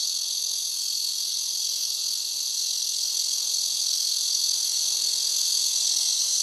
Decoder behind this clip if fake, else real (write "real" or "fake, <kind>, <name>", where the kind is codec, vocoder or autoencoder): fake, codec, SNAC